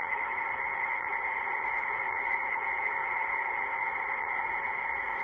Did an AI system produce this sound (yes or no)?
yes